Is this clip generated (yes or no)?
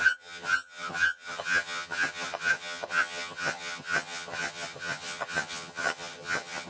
yes